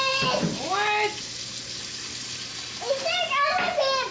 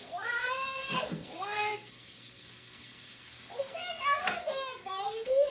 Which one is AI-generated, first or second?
second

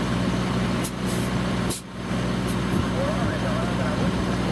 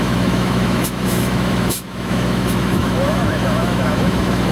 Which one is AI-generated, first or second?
second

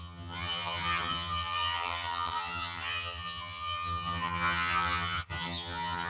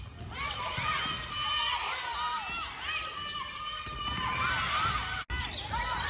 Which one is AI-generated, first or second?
first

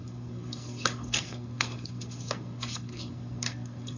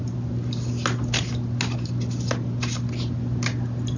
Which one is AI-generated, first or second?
first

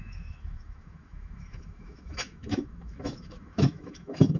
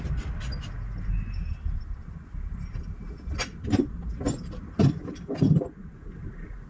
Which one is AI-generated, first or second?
first